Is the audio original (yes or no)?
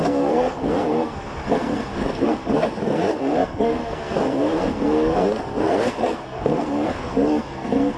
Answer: no